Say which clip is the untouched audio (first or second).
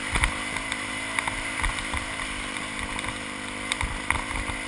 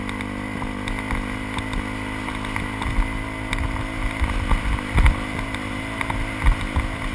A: second